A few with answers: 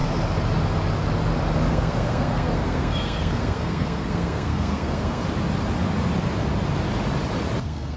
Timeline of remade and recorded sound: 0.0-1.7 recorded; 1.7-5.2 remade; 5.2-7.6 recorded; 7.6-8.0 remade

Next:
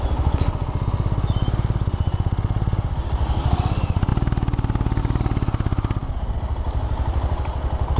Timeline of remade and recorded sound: 0.0-8.0 recorded

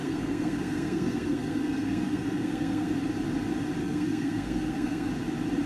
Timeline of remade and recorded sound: 0.0-2.9 remade; 2.9-3.8 recorded; 3.8-5.1 remade; 5.1-5.7 recorded

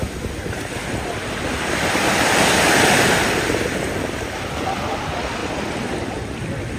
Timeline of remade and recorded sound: 0.0-6.8 recorded

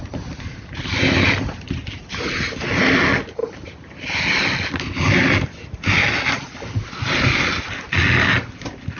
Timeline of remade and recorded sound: 0.0-9.0 recorded

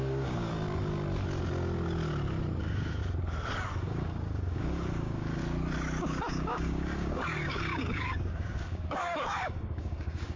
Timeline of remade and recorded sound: 0.0-0.5 remade; 0.5-2.6 recorded; 2.6-3.0 remade; 3.0-3.8 recorded; 3.8-5.4 remade; 5.4-6.0 recorded; 6.0-10.4 remade

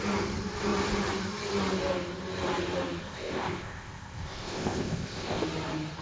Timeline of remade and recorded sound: 0.0-3.0 recorded; 3.0-5.4 remade; 5.4-6.0 recorded